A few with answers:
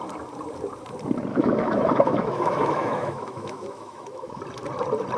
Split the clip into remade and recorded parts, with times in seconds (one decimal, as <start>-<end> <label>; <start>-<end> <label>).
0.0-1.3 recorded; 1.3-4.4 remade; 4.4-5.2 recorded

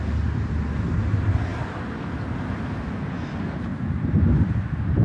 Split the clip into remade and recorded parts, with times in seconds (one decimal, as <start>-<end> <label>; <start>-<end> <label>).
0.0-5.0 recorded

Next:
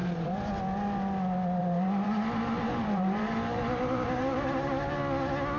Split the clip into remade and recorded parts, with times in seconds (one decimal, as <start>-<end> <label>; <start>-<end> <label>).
0.0-0.5 remade; 0.5-1.6 recorded; 1.6-5.0 remade; 5.0-5.6 recorded

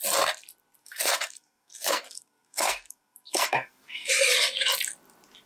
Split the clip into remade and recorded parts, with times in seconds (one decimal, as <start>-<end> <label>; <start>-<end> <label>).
0.0-0.8 recorded; 0.8-4.1 remade; 4.1-5.5 recorded

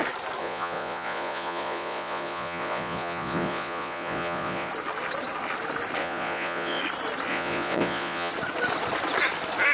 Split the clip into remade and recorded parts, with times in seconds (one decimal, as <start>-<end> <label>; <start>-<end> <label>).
0.0-0.4 recorded; 0.4-4.7 remade; 4.7-6.0 recorded; 6.0-6.8 remade; 6.8-7.3 recorded; 7.3-8.3 remade; 8.3-9.7 recorded